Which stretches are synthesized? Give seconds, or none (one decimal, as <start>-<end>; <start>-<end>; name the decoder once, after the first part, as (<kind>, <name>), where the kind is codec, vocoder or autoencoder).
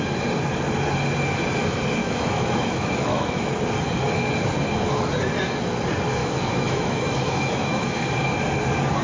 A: 2.0-3.5 (autoencoder, DAC-VAE); 6.2-8.1